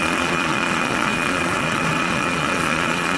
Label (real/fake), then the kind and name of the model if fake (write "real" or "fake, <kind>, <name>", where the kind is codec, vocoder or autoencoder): fake, vocoder, Vocos